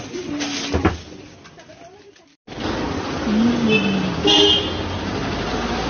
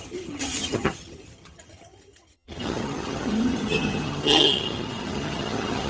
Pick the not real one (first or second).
second